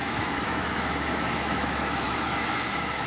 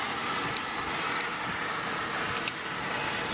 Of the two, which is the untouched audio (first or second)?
second